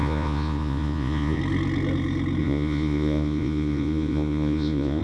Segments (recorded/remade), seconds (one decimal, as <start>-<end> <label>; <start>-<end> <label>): 0.0-1.4 remade; 1.4-2.4 recorded; 2.4-5.0 remade